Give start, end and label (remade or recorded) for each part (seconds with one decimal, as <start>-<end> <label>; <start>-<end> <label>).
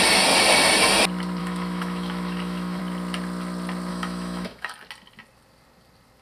0.0-1.4 recorded; 1.4-2.8 remade; 2.8-3.9 recorded; 3.9-4.7 remade; 4.7-6.2 recorded